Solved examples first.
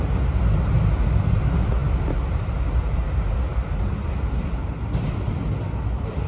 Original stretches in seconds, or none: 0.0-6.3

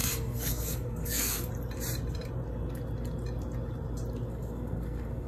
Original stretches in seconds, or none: 1.5-4.3

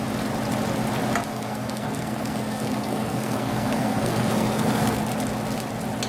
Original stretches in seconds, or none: 0.0-1.3; 5.0-6.1

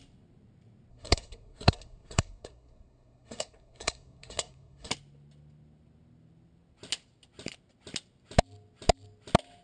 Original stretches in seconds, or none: 0.0-0.9; 4.9-9.6